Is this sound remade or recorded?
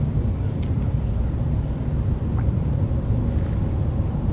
recorded